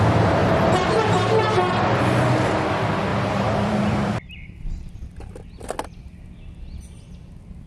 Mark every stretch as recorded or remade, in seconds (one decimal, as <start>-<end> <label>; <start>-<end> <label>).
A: 0.0-0.4 recorded; 0.4-1.4 remade; 1.4-3.1 recorded; 3.1-4.1 remade; 4.1-7.7 recorded